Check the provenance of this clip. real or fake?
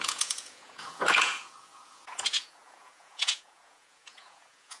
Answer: fake